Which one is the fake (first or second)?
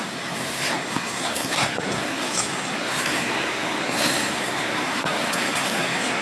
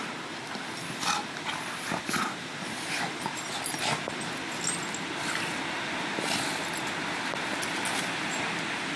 first